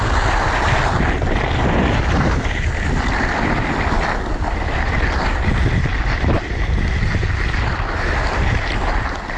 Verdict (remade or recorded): recorded